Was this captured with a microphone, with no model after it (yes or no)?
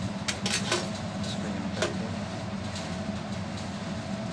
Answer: yes